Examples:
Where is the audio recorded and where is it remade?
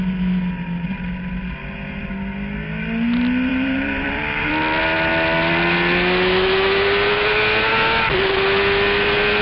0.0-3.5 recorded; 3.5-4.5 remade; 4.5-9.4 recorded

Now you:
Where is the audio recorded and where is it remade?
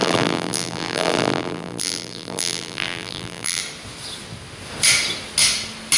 0.0-3.6 remade; 3.6-6.0 recorded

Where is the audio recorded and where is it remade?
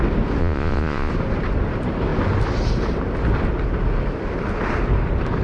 0.0-0.4 recorded; 0.4-1.1 remade; 1.1-5.4 recorded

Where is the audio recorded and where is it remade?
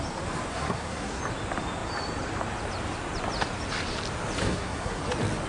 0.0-0.5 recorded; 0.5-1.2 remade; 1.2-4.4 recorded; 4.4-5.0 remade; 5.0-5.5 recorded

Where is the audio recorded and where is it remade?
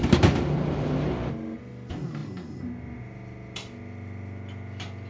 0.0-5.1 remade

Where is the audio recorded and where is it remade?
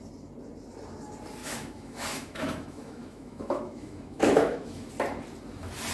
0.0-1.4 recorded; 1.4-4.9 remade; 4.9-5.9 recorded